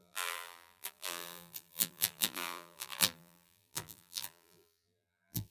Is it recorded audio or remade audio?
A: remade